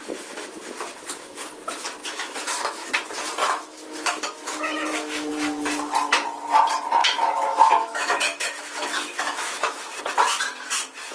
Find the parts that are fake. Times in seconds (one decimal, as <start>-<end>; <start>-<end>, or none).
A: 2.0-2.9; 3.4-5.3; 7.0-10.0